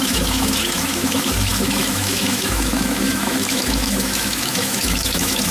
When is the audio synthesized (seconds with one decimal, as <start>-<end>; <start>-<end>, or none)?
0.0-5.5